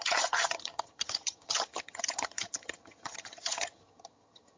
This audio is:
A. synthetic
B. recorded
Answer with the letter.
A